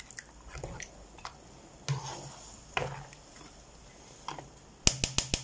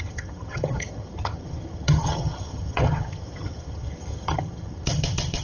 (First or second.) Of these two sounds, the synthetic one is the second